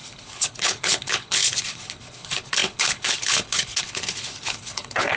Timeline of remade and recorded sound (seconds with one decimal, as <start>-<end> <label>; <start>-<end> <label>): 0.0-5.2 remade